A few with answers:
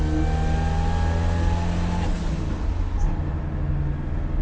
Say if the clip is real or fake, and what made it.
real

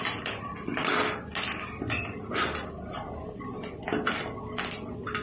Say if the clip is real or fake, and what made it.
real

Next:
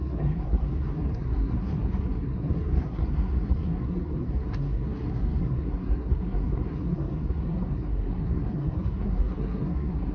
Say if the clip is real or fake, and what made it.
fake, codec, SNAC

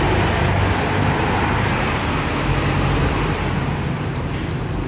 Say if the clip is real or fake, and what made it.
real